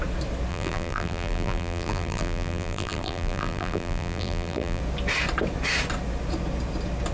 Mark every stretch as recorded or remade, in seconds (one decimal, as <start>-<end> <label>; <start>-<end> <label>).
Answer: 0.0-0.5 recorded; 0.5-4.8 remade; 4.8-7.1 recorded